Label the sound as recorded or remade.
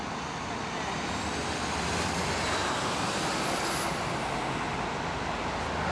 recorded